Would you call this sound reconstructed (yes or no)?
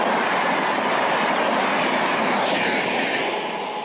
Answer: no